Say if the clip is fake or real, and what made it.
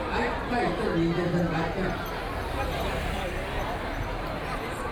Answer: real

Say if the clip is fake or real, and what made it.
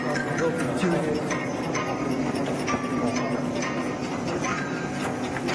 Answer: real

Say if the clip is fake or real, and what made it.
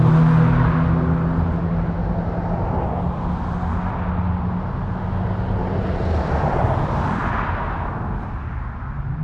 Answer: real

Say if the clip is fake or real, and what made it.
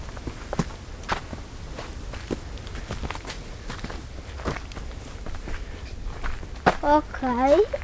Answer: real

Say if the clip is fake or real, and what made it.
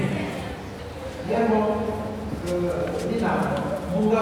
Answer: real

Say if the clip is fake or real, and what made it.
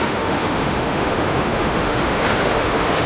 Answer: fake, autoencoder, DAC-VAE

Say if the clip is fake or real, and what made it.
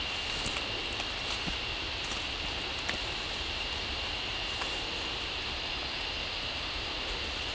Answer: real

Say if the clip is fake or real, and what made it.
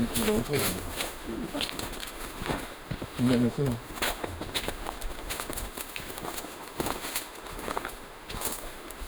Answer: fake, autoencoder, DAC-VAE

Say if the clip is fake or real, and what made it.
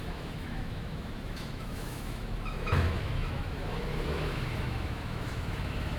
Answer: fake, autoencoder, DAC-VAE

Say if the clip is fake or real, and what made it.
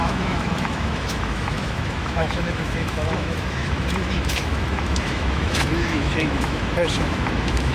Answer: fake, autoencoder, DAC-VAE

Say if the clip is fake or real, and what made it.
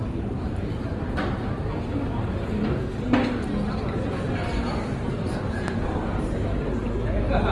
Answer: real